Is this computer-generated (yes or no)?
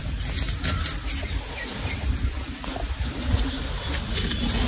no